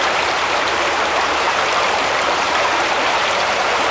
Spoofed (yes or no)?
yes